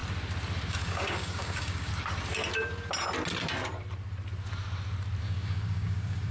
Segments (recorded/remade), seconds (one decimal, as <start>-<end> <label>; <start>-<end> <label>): 0.0-0.7 recorded; 0.7-1.9 remade; 1.9-5.2 recorded; 5.2-6.3 remade